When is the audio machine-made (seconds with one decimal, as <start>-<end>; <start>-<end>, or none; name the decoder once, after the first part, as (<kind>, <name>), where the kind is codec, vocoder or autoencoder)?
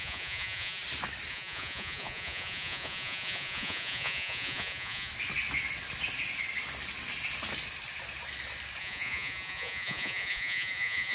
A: 0.0-0.8 (vocoder, Vocos); 1.3-5.1; 8.8-11.1